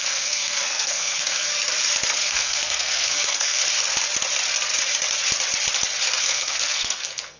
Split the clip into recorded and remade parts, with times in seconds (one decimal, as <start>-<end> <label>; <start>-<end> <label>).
0.0-1.5 remade; 1.5-2.2 recorded; 2.2-3.6 remade; 3.6-6.2 recorded; 6.2-7.4 remade

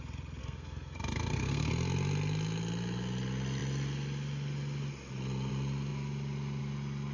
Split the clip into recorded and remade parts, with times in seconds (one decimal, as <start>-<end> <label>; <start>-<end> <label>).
0.0-0.4 recorded; 0.4-1.7 remade; 1.7-7.1 recorded

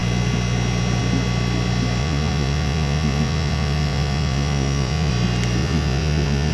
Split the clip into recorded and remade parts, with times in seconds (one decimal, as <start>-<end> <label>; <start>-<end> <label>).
0.0-2.0 recorded; 2.0-5.1 remade; 5.1-5.6 recorded; 5.6-6.5 remade

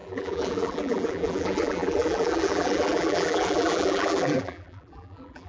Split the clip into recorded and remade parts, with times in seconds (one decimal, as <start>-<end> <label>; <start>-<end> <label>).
0.0-5.5 remade

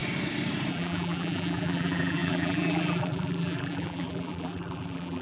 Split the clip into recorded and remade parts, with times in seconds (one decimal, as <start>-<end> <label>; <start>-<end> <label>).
0.0-0.7 recorded; 0.7-5.2 remade

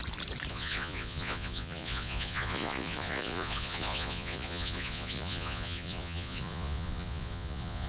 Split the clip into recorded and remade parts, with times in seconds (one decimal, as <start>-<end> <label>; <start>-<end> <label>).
0.0-0.5 recorded; 0.5-7.9 remade

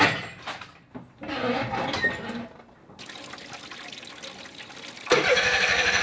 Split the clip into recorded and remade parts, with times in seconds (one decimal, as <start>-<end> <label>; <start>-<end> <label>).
0.0-5.3 recorded; 5.3-6.0 remade

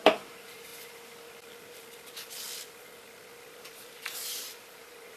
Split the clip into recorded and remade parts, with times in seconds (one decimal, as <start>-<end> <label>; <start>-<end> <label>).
0.0-0.7 remade; 0.7-3.5 recorded; 3.5-5.2 remade